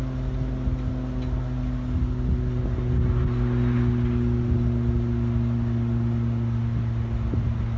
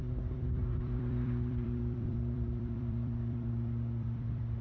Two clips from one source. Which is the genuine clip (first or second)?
first